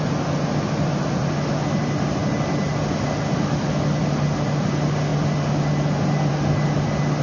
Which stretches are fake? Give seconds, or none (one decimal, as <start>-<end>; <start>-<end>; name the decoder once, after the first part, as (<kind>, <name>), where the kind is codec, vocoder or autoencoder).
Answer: none